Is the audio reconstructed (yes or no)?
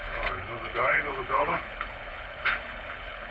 yes